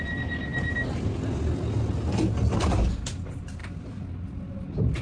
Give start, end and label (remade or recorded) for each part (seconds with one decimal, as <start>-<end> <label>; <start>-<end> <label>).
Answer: 0.0-5.0 recorded